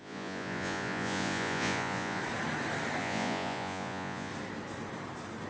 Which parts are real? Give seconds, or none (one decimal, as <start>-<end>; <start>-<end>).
2.2-3.0; 4.3-5.5